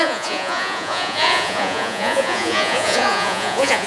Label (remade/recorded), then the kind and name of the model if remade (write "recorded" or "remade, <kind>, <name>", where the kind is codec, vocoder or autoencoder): remade, vocoder, Vocos